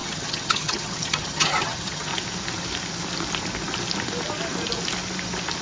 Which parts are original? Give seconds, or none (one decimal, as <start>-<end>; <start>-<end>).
2.1-5.6